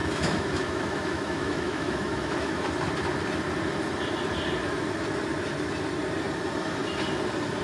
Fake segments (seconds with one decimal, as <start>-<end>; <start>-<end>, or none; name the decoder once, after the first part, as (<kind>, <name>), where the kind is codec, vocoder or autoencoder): 0.0-2.7 (autoencoder, DAC-VAE)